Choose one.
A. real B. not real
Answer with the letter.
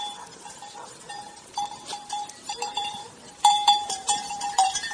B